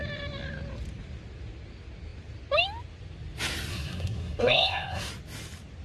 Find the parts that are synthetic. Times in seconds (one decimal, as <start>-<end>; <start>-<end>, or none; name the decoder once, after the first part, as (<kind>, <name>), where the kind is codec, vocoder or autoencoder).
3.7-5.1 (codec, SNAC)